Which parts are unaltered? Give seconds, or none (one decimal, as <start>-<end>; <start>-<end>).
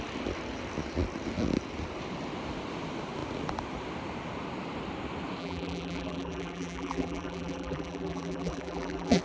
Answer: 0.0-5.4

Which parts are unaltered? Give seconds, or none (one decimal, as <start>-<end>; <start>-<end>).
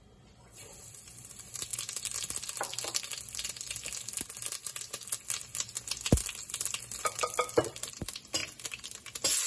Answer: 1.7-7.0; 8.4-9.5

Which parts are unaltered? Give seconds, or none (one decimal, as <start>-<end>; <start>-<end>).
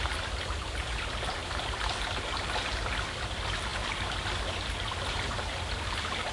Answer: none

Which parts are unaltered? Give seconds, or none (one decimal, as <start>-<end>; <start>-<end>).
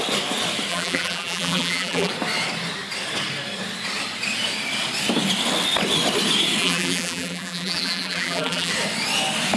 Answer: 0.0-0.7; 2.1-6.6; 8.7-9.6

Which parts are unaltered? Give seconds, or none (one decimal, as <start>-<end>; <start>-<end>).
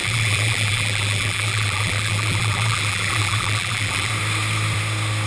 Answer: 4.1-5.3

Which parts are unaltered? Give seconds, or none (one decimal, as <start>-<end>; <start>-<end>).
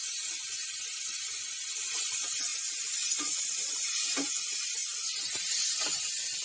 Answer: 0.0-1.6; 2.5-3.6; 4.8-5.7